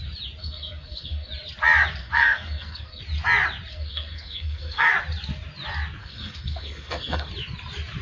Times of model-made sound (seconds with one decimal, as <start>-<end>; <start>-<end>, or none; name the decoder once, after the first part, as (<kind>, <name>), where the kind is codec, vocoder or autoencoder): 0.4-1.3 (codec, SNAC); 2.0-3.0; 3.7-4.9; 6.0-7.3

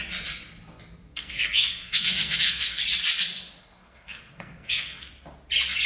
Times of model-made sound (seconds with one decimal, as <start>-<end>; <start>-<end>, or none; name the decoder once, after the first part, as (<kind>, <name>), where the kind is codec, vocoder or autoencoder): 1.1-2.8 (codec, SNAC); 3.6-5.1

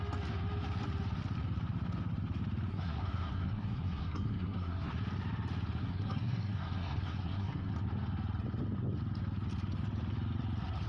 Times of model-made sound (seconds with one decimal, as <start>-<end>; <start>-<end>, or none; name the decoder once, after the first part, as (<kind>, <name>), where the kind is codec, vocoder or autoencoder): 2.7-4.9 (codec, SNAC); 5.8-7.7

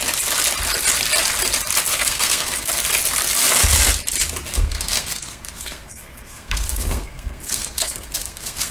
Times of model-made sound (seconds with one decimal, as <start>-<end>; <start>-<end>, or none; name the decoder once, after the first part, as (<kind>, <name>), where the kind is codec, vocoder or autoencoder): 1.9-2.8 (codec, SNAC); 4.5-8.7

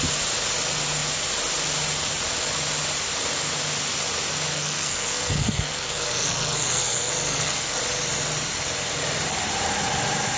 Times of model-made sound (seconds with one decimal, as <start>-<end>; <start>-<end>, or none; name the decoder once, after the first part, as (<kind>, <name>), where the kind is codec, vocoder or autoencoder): 4.5-7.8 (codec, SNAC)

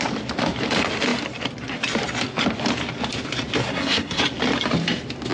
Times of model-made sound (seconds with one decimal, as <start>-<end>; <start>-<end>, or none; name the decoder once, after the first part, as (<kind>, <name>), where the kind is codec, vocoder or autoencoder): 3.6-4.2 (codec, SNAC)

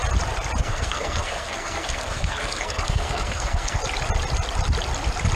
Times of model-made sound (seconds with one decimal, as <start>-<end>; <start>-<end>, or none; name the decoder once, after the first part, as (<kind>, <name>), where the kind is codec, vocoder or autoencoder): 0.6-3.8 (codec, SNAC)